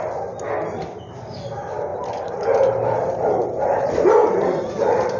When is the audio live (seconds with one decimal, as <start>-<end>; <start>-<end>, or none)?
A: 0.0-1.9